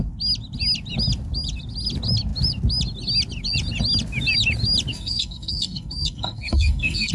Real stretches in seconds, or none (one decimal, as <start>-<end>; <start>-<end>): 0.0-4.9